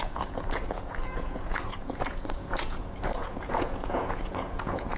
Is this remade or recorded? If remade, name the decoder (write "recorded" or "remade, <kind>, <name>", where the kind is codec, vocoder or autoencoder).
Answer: remade, vocoder, Vocos